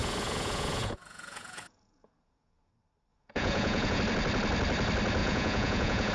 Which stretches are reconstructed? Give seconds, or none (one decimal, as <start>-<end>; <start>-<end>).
0.0-2.7; 3.1-4.0; 5.2-6.1